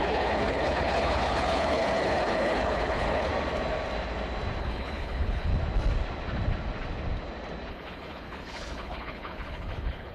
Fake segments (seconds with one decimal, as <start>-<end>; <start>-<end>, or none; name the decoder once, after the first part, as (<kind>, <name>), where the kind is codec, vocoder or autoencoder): 0.0-3.3 (codec, HILCodec); 4.6-5.5; 7.7-10.1